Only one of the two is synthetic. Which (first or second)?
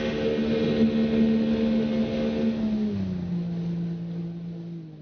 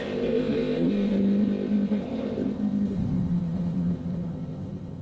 second